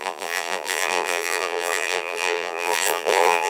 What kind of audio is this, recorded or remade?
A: remade